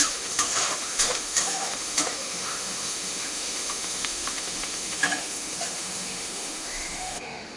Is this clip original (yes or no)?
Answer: no